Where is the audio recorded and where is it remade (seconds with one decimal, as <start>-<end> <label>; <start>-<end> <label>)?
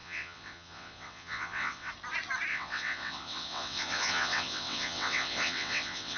0.0-1.9 remade; 1.9-2.5 recorded; 2.5-6.2 remade